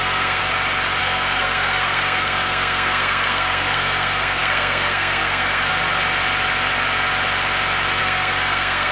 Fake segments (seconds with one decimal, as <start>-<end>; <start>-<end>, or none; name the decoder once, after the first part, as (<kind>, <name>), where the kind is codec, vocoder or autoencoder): 0.0-0.4 (codec, SNAC); 1.0-5.7; 8.0-8.9